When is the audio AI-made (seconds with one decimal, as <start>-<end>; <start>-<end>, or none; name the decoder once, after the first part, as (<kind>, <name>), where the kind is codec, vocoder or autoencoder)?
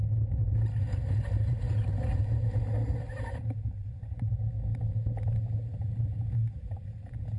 0.8-4.3 (vocoder, BigVGAN v2); 5.8-7.4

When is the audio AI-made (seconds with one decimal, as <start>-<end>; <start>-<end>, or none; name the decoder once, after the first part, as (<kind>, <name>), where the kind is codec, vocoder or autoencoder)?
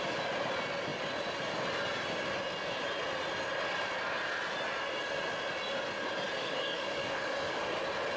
6.4-7.6 (codec, DAC)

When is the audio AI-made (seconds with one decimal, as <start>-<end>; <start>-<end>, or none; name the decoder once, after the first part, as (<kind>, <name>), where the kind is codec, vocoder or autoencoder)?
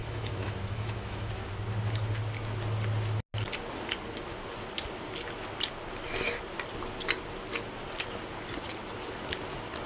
0.0-1.3 (autoencoder, DAC-VAE)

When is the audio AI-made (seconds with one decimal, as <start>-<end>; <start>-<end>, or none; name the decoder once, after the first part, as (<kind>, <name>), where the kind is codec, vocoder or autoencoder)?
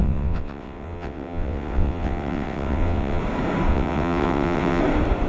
0.0-3.2 (vocoder, WaveNeXt); 3.7-4.8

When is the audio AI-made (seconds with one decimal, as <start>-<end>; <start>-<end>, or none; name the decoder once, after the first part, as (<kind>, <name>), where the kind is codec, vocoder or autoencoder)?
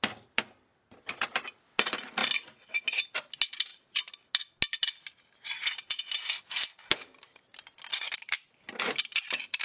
none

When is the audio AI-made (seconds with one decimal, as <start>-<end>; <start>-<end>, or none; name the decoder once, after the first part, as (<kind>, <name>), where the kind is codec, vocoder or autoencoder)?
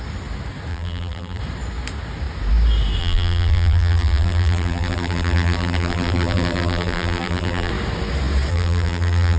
0.7-1.4 (vocoder, BigVGAN v2); 3.0-7.7; 8.5-9.4